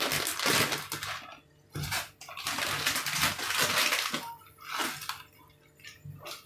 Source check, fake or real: real